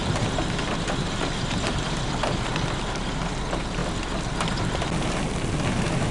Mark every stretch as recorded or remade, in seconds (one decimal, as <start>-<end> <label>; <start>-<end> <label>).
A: 0.0-3.8 remade; 3.8-6.1 recorded